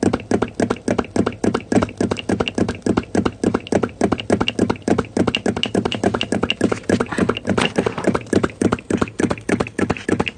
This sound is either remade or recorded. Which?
recorded